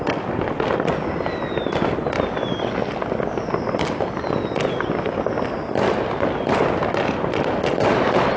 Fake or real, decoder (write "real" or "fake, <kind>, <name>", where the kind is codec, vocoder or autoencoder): real